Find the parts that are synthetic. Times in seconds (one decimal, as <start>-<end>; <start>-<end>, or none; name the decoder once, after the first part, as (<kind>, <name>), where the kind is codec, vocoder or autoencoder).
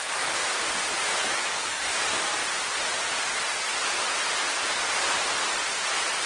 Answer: 0.0-0.4 (codec, DAC); 1.2-2.4